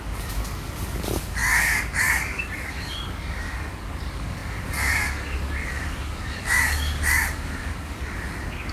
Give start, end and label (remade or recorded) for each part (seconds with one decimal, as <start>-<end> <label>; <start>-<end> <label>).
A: 0.0-8.7 remade